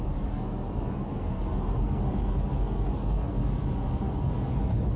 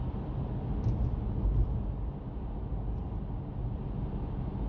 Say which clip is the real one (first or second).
second